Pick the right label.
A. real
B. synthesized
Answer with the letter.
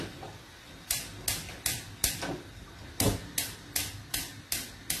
A